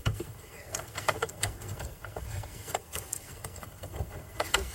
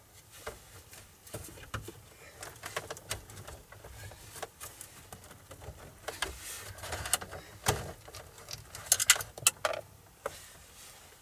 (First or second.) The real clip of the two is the second